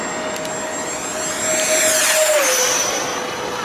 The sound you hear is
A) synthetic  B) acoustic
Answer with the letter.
B